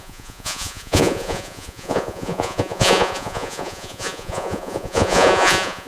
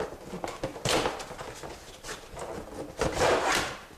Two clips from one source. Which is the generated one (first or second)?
first